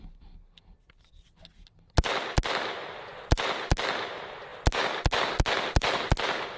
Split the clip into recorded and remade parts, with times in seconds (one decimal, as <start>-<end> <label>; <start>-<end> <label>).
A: 0.0-6.6 recorded